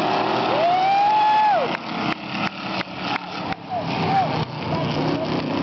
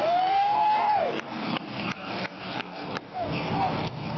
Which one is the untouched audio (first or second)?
first